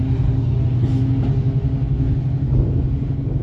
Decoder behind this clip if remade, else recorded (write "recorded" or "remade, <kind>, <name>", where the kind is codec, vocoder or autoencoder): recorded